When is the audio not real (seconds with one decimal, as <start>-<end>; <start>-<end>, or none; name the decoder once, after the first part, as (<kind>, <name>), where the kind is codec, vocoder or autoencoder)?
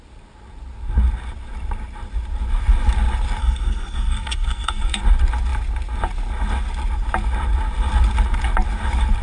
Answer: 3.4-5.0 (codec, SNAC)